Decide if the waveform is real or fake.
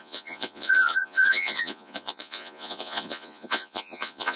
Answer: fake